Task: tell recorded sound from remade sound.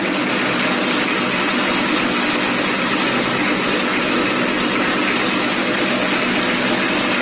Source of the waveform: recorded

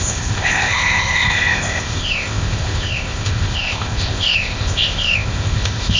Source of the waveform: remade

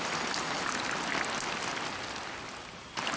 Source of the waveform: recorded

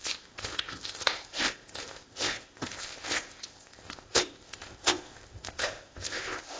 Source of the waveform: remade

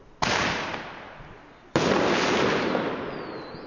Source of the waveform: recorded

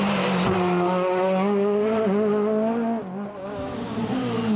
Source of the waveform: recorded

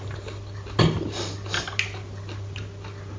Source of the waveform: recorded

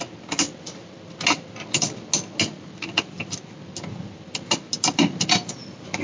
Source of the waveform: recorded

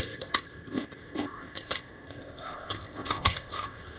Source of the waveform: remade